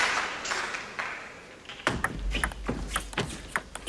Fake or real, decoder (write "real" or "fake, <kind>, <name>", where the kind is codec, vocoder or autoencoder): real